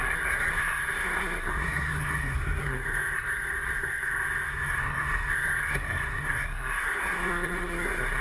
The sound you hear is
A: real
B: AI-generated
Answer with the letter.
B